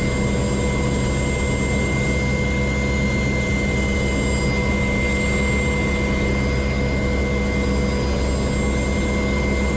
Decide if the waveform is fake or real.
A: real